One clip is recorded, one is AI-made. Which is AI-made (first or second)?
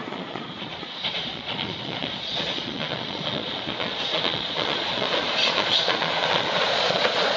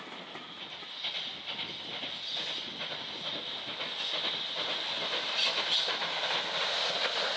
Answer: first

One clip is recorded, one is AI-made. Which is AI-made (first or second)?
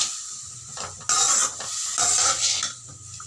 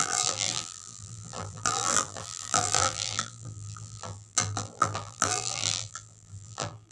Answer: second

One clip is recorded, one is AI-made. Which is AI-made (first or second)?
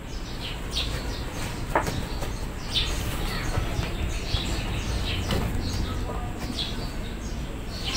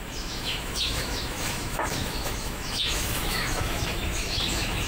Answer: second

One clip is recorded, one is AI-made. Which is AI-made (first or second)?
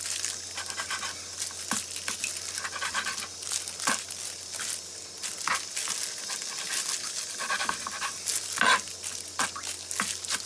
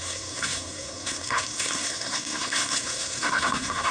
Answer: second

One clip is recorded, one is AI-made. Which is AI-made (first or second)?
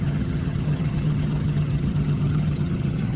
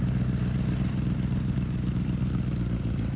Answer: first